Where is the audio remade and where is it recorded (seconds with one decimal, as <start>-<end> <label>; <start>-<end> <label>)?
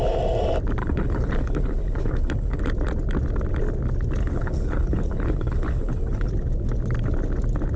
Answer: 0.0-0.8 recorded; 0.8-2.6 remade; 2.6-4.2 recorded; 4.2-6.3 remade; 6.3-7.8 recorded